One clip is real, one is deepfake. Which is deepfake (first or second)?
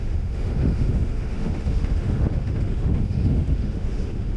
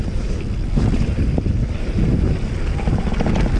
first